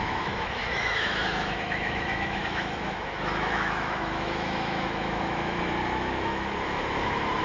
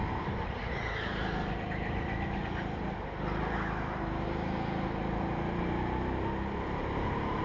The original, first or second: second